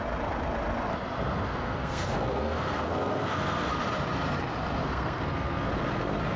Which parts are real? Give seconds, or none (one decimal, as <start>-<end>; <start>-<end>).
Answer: 0.0-1.3; 3.7-4.8; 5.7-6.4